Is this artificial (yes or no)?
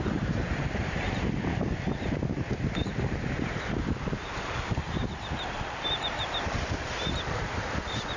yes